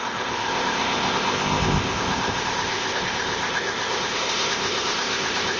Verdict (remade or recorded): remade